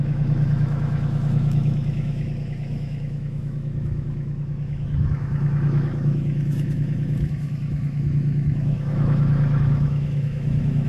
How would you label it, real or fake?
fake